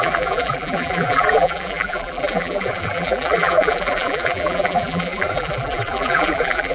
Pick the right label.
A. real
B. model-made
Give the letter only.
B